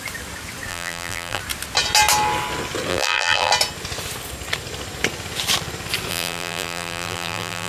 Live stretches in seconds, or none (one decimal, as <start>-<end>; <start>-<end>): 0.0-0.7; 1.4-2.9; 3.5-6.1